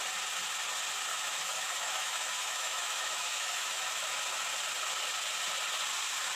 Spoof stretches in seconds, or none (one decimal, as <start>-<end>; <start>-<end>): 1.1-4.2